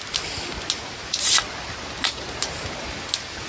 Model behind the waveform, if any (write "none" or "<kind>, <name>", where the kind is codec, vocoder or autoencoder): none